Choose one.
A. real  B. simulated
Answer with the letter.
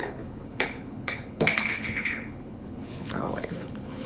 B